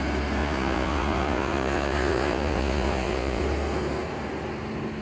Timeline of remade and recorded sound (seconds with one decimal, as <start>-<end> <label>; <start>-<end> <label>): 0.0-0.4 recorded; 0.4-3.4 remade; 3.4-5.0 recorded